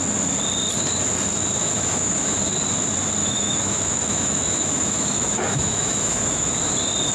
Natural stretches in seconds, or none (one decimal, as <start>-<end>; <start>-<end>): 0.0-1.6; 2.4-3.2; 6.5-7.1